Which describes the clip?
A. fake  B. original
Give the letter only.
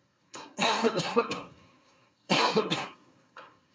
A